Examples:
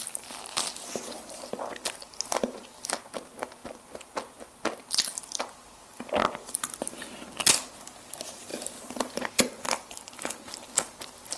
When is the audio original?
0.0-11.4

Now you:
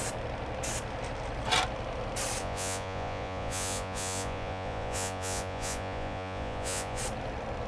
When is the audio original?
0.0-2.4; 7.0-7.7

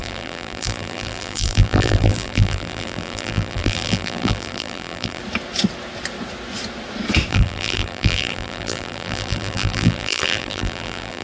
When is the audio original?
5.2-7.3

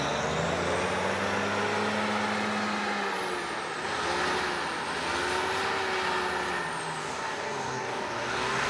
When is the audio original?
0.0-7.0